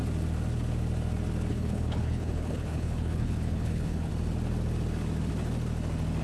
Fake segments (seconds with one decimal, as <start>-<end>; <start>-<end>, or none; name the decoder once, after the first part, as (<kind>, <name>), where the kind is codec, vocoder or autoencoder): 1.5-4.1 (codec, HILCodec)